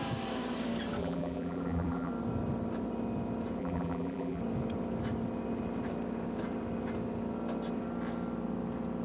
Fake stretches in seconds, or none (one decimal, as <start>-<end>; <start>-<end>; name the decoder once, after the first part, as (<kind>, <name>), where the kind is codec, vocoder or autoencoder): 1.0-2.1 (vocoder, BigVGAN v2); 3.6-4.4